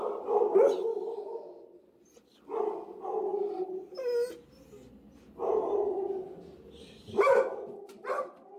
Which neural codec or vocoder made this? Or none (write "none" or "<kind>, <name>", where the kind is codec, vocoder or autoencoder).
none